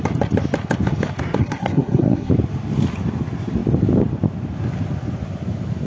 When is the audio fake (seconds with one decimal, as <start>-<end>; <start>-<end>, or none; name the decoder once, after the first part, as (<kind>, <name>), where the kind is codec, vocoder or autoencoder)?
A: 1.4-2.3 (codec, SNAC)